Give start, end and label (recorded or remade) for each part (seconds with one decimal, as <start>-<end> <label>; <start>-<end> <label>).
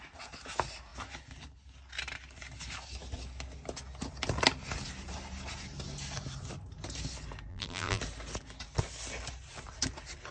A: 0.0-7.5 recorded; 7.5-8.0 remade; 8.0-10.3 recorded